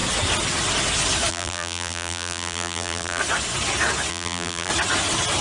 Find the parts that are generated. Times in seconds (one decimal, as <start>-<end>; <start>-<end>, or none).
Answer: 1.3-3.2; 4.1-4.7